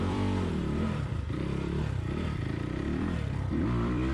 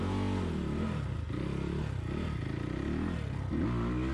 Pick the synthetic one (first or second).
first